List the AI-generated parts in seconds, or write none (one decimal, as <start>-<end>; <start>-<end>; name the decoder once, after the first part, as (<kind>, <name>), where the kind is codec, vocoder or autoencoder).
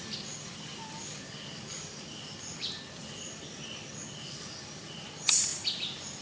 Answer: none